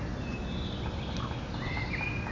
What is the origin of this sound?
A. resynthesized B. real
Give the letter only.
B